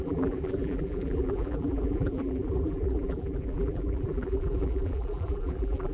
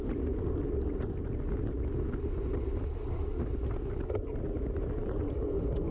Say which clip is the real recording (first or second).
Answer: second